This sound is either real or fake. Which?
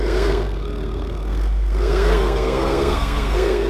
fake